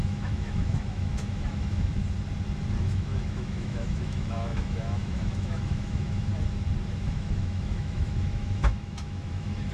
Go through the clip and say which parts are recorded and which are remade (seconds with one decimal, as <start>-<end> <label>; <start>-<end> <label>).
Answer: 0.0-2.0 remade; 2.0-2.8 recorded; 2.8-6.3 remade; 6.3-7.0 recorded; 7.0-9.7 remade